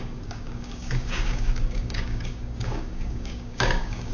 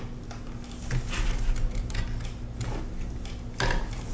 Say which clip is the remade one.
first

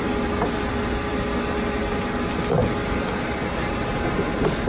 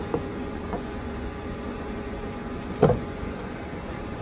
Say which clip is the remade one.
second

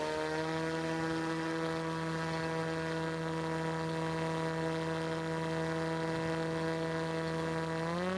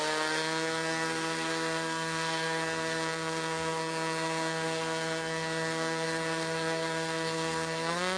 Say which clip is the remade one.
second